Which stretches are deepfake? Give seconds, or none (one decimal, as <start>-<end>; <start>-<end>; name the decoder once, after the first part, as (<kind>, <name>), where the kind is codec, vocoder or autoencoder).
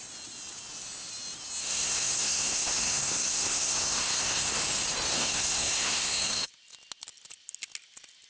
1.6-4.6 (codec, SNAC); 5.1-6.5